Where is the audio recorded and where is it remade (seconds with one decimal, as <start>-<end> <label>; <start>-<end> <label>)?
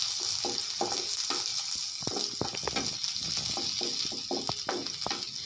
0.0-5.5 recorded